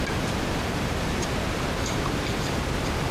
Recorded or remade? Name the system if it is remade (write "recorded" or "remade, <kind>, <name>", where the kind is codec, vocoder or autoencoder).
remade, vocoder, BigVGAN v2